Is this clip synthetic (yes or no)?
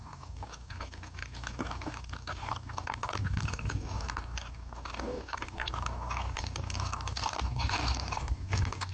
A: yes